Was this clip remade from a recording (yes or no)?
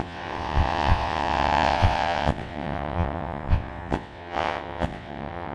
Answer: yes